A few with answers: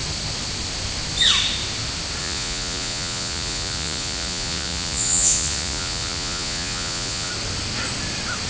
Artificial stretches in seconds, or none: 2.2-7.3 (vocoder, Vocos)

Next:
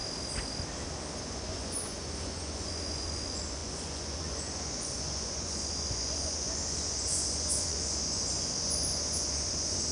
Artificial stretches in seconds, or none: 1.2-9.9 (vocoder, Vocos)

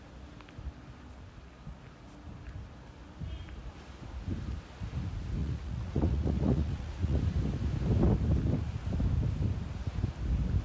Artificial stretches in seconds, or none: 5.4-7.2 (vocoder, Vocos)

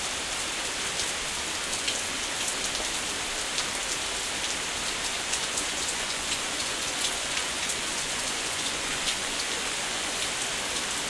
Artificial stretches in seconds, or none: 1.7-2.5 (vocoder, Vocos); 5.1-10.2

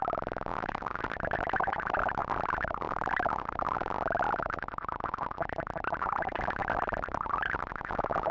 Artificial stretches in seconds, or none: none

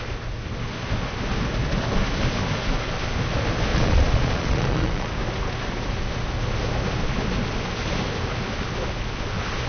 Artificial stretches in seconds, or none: 3.7-5.1 (vocoder, Vocos)

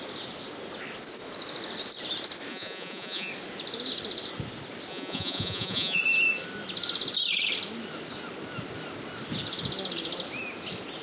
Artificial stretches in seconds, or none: 2.5-3.3 (vocoder, Vocos); 4.9-6.0

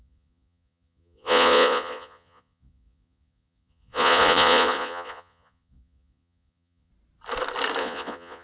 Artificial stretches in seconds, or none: 0.0-6.9 (vocoder, Vocos); 7.8-8.4